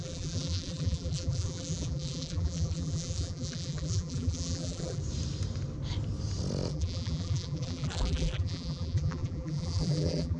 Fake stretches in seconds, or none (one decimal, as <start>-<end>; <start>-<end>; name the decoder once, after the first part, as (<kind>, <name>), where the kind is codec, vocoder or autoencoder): 0.0-5.0 (vocoder, BigVGAN v2); 6.7-10.4